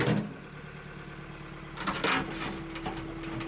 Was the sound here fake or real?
real